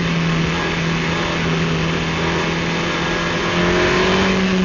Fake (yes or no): no